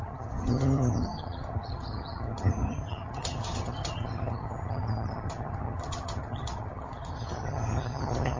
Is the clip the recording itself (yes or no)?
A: no